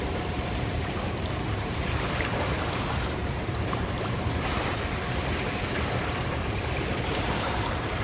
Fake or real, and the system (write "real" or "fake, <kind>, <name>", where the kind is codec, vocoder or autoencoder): fake, vocoder, BigVGAN v2